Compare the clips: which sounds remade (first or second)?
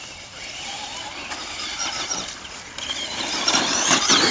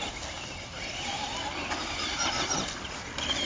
first